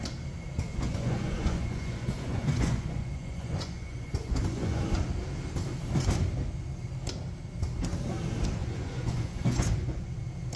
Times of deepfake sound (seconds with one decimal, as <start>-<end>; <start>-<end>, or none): 0.7-4.8; 8.6-10.2